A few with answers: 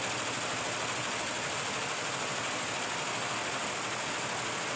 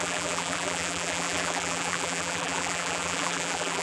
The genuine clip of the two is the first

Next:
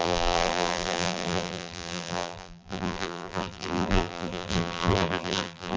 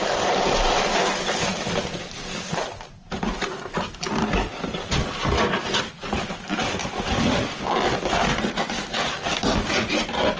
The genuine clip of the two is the second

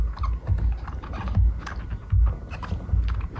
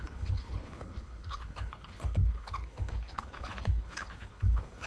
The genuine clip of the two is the first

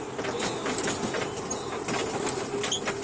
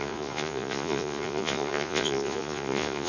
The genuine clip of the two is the first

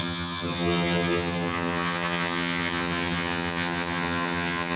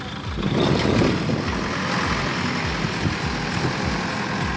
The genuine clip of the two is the second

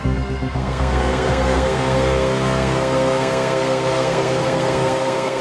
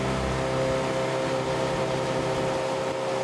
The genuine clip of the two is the second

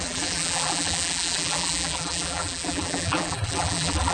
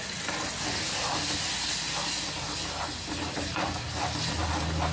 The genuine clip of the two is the second